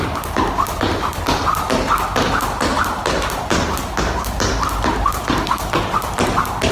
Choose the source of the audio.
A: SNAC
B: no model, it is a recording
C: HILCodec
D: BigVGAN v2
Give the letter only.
B